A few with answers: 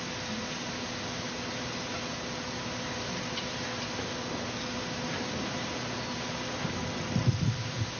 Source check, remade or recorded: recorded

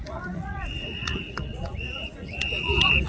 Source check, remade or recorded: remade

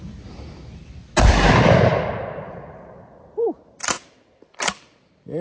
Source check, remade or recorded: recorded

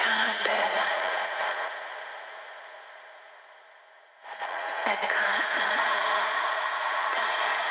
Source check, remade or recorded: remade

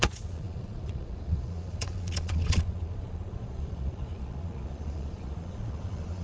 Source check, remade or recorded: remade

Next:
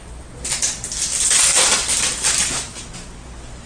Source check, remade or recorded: recorded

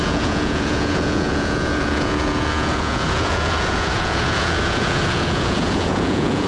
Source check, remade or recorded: remade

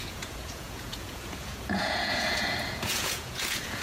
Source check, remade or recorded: remade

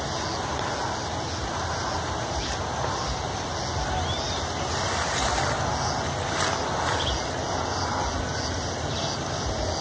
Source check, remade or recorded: recorded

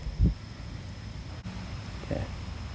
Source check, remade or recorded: recorded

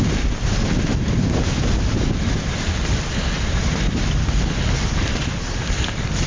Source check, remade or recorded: recorded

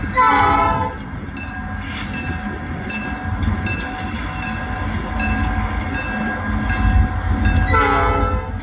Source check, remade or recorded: recorded